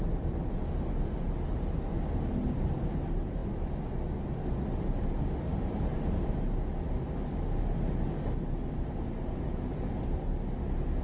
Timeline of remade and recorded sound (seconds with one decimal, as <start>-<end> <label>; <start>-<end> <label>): 0.0-11.0 recorded